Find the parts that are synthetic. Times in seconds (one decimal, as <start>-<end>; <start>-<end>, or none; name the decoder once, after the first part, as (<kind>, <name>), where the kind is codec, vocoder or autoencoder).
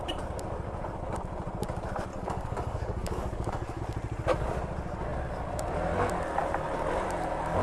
2.1-3.8 (codec, DAC)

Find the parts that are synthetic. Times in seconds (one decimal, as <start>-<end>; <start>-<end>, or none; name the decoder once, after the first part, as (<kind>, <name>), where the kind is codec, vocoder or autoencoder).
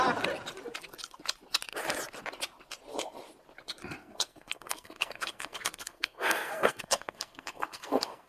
4.0-8.3 (codec, SNAC)